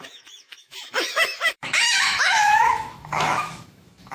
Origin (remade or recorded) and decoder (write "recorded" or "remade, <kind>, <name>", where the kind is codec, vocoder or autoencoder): remade, autoencoder, DAC-VAE